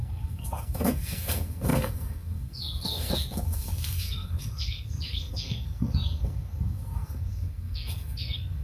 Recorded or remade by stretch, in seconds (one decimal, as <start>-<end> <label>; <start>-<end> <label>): 0.0-8.6 remade